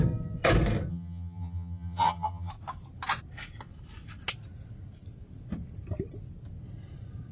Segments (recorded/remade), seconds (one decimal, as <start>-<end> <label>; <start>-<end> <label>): 0.0-0.9 recorded; 0.9-2.5 remade; 2.5-7.3 recorded